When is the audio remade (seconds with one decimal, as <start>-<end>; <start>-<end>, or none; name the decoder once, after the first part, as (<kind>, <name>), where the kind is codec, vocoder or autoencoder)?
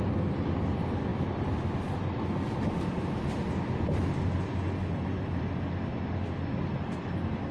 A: none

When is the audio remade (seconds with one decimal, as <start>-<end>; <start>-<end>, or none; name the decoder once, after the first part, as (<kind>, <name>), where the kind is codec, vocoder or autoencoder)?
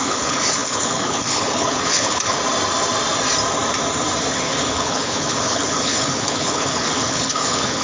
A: 0.0-2.4 (codec, HILCodec); 4.3-7.8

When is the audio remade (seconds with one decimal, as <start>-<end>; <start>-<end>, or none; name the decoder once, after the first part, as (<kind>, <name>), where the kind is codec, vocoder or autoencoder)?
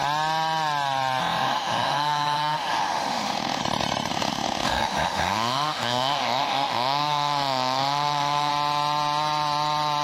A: 1.2-3.6 (autoencoder, DAC-VAE); 4.1-8.5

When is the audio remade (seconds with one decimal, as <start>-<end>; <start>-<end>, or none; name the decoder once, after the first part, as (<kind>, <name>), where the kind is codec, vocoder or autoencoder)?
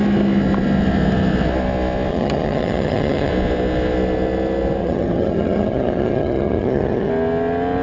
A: 2.1-3.3 (vocoder, HiFi-GAN); 4.8-7.1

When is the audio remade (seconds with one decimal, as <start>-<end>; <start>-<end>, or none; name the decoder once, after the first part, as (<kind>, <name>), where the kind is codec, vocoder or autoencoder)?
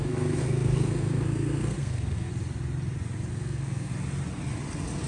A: 0.0-2.3 (codec, SNAC); 3.3-3.9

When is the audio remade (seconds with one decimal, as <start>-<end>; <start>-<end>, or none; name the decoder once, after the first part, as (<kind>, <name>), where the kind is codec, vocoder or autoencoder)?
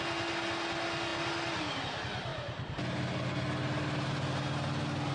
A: none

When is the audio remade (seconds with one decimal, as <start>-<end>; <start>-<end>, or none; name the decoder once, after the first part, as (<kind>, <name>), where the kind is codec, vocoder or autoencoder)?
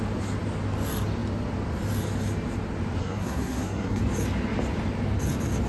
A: 3.0-4.0 (codec, SNAC)